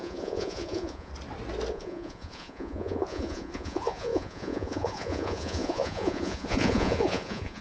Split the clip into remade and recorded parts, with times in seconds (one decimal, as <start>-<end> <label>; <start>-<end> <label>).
0.0-1.1 remade; 1.1-1.7 recorded; 1.7-7.6 remade